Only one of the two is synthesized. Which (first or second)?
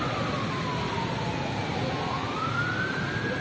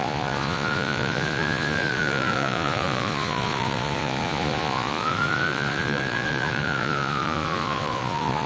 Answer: second